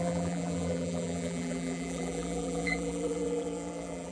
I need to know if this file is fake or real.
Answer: fake